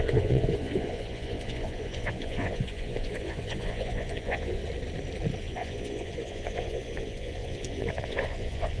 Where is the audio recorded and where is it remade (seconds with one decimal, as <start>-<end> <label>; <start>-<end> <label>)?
0.0-4.6 remade; 4.6-5.4 recorded; 5.4-8.8 remade